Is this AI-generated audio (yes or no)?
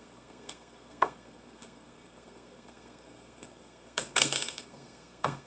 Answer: yes